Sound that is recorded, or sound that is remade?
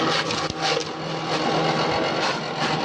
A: recorded